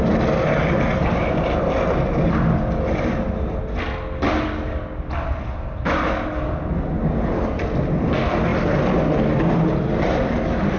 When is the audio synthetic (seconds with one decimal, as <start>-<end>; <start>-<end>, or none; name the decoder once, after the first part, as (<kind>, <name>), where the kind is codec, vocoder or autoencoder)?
none